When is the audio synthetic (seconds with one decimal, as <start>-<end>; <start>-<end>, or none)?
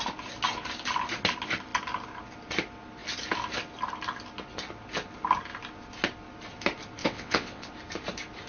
7.0-7.7